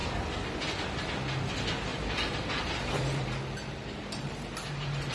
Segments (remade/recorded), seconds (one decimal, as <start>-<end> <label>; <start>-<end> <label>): 0.0-1.9 recorded; 1.9-5.1 remade